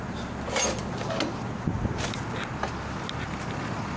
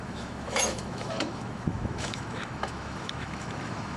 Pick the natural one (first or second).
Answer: first